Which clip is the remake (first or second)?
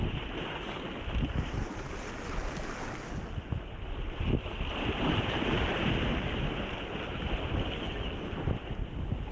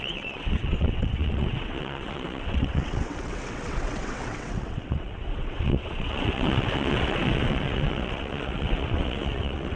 second